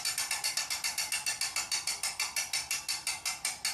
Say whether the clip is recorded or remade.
recorded